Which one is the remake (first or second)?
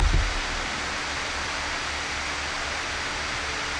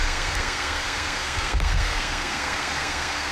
second